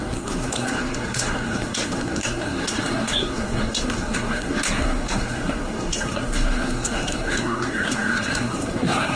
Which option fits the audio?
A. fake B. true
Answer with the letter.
A